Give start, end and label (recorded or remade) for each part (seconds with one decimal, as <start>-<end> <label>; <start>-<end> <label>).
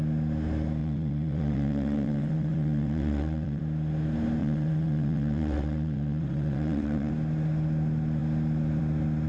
0.0-0.8 recorded; 0.8-3.6 remade; 3.6-4.4 recorded; 4.4-7.1 remade; 7.1-9.3 recorded